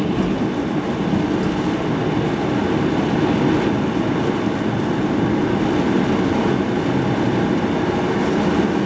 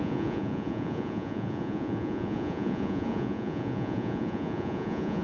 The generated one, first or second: second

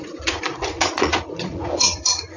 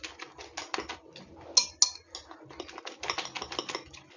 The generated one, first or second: first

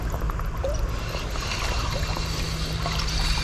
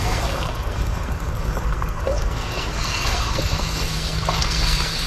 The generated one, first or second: second